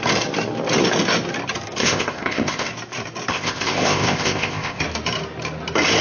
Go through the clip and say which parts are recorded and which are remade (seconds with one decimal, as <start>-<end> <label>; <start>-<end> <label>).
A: 0.0-1.8 recorded; 1.8-2.7 remade; 2.7-3.3 recorded; 3.3-4.8 remade; 4.8-6.0 recorded

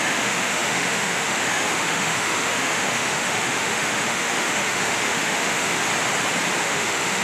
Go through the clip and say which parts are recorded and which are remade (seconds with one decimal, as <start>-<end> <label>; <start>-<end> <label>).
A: 0.0-5.8 remade; 5.8-6.6 recorded; 6.6-7.2 remade

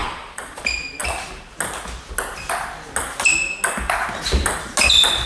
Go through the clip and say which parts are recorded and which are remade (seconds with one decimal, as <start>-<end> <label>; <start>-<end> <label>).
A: 0.0-0.6 remade; 0.6-5.3 recorded

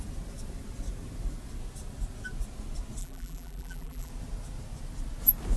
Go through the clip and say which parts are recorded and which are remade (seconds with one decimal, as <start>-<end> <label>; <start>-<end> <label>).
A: 0.0-3.0 recorded; 3.0-4.1 remade; 4.1-5.6 recorded

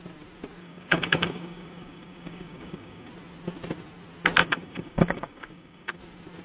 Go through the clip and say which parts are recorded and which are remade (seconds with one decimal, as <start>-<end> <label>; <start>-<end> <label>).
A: 0.0-0.6 recorded; 0.6-3.1 remade; 3.1-4.4 recorded; 4.4-6.0 remade; 6.0-6.4 recorded

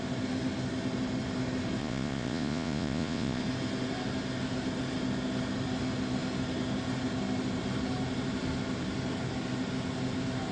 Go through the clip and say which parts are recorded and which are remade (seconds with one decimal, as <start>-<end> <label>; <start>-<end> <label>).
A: 0.0-1.8 recorded; 1.8-3.4 remade; 3.4-10.5 recorded